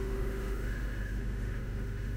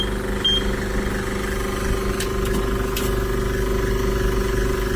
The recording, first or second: second